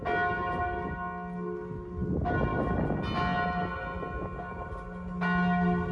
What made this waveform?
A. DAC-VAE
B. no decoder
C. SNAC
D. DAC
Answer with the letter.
B